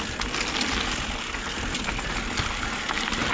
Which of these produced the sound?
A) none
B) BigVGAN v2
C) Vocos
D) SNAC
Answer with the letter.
A